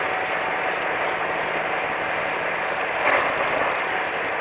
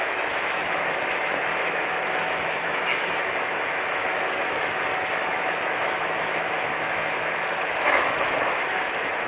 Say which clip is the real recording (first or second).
first